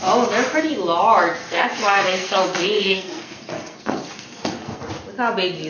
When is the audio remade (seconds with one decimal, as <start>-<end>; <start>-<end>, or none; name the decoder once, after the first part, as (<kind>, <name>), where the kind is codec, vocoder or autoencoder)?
1.4-4.8 (codec, SNAC)